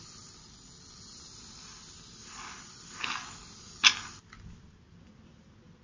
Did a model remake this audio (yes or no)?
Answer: no